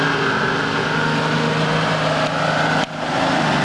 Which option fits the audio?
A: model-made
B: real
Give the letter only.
B